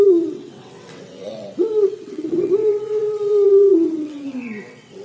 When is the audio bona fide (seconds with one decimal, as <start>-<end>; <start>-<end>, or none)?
none